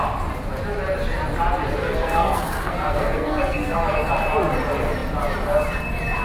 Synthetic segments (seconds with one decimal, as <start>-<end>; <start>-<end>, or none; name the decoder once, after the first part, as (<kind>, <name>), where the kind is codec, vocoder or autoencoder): 1.8-4.1 (codec, SNAC)

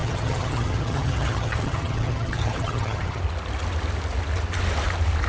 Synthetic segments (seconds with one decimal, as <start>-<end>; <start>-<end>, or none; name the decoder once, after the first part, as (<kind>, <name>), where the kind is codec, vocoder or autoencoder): 0.0-3.2 (vocoder, HiFi-GAN)

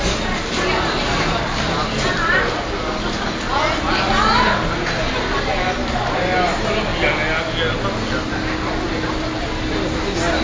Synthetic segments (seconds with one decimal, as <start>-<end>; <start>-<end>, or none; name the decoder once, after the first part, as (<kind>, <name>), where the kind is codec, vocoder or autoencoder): none

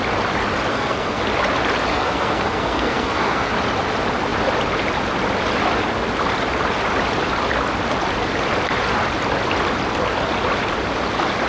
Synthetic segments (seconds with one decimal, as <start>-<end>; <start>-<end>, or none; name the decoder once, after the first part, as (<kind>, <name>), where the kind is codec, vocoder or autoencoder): 0.7-1.2 (codec, SNAC); 1.9-3.5